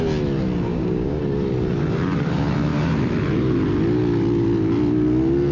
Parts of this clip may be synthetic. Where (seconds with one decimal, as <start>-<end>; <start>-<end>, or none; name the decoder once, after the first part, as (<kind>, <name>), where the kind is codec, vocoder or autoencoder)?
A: 0.7-1.2 (codec, DAC)